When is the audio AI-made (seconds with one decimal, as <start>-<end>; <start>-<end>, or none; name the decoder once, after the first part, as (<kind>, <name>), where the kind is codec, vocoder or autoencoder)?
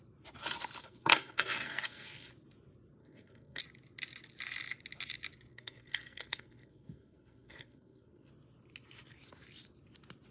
0.8-2.3 (codec, SNAC); 3.0-3.6; 5.5-8.3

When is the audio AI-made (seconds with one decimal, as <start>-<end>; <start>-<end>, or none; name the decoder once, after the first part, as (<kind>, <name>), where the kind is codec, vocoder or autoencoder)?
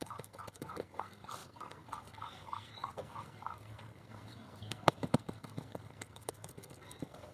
0.0-7.3 (codec, SNAC)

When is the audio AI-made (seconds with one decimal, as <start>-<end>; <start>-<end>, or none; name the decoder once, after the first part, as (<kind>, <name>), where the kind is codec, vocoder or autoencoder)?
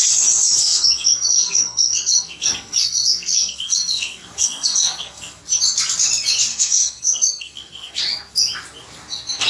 0.6-5.4 (codec, SNAC); 6.5-8.0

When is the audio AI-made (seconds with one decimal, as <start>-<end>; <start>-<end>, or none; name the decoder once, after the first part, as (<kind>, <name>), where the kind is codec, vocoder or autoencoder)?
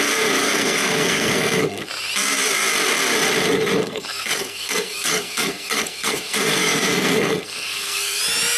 0.4-1.9 (codec, SNAC); 3.8-8.2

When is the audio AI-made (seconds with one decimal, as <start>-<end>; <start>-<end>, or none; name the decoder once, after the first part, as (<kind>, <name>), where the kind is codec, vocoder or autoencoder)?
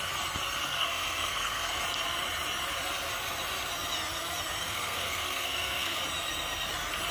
0.6-1.8 (codec, SNAC); 4.6-6.0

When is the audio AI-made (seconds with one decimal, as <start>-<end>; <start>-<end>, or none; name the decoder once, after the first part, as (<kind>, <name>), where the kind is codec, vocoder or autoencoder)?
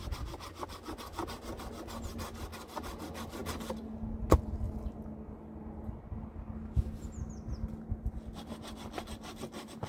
none